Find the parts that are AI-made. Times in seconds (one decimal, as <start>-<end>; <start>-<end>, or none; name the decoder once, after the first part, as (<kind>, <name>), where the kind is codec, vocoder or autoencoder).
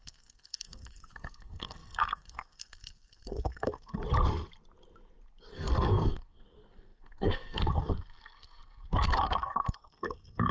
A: 0.0-4.0 (codec, SNAC); 5.5-10.5